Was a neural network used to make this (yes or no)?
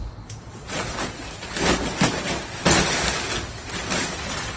no